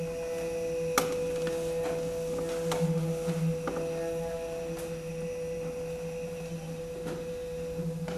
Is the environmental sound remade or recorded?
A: recorded